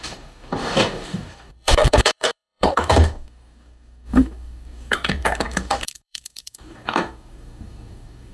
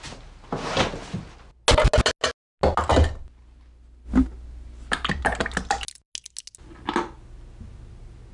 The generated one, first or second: first